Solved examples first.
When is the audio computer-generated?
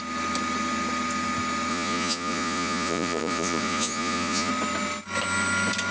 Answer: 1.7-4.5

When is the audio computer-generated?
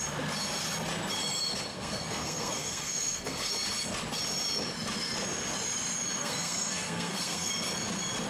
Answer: 1.7-3.5; 6.2-7.5